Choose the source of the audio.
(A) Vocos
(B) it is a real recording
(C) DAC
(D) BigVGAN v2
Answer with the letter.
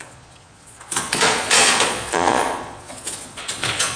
A